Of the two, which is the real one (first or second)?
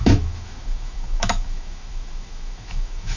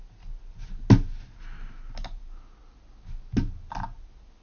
second